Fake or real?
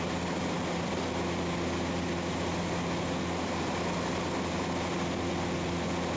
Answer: real